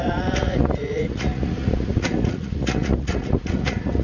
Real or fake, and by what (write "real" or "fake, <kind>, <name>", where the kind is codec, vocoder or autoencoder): fake, vocoder, Vocos